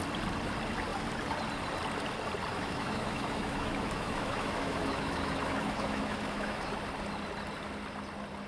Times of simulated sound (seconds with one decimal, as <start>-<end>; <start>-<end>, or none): 2.5-6.7